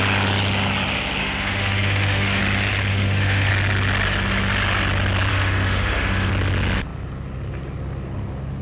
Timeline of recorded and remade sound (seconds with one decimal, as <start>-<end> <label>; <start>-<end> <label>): 0.0-1.2 recorded; 1.2-2.4 remade; 2.4-2.9 recorded; 2.9-3.5 remade; 3.5-5.3 recorded; 5.3-6.3 remade; 6.3-8.6 recorded

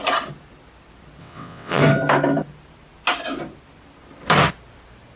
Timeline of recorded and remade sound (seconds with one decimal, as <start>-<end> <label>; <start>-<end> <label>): 0.0-1.2 recorded; 1.2-1.8 remade; 1.8-5.2 recorded